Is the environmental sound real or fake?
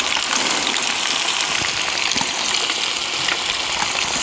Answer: real